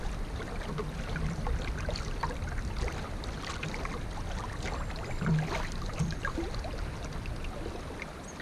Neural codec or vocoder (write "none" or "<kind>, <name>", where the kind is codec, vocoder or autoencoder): none